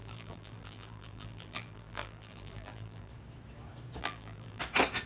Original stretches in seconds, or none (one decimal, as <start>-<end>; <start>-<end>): 3.1-4.0; 4.6-5.1